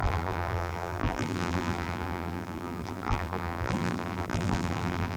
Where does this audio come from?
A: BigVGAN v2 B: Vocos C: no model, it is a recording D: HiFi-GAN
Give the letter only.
A